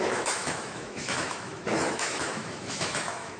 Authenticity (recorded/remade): remade